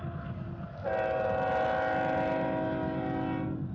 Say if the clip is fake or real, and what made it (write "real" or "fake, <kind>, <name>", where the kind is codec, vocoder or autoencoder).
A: real